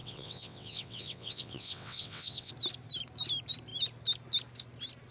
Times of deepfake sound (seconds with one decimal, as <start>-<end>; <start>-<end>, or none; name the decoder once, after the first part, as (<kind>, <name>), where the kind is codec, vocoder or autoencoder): 0.0-2.5 (vocoder, WaveNeXt)